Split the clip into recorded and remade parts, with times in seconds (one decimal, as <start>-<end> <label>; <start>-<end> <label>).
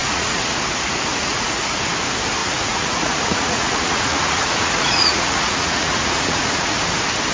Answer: 0.0-0.6 remade; 0.6-1.1 recorded; 1.1-1.8 remade; 1.8-2.4 recorded; 2.4-6.8 remade; 6.8-7.3 recorded